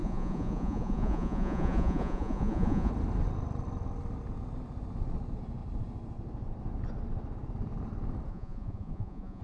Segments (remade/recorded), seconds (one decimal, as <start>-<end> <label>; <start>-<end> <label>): 0.0-2.9 remade; 2.9-8.3 recorded; 8.3-9.4 remade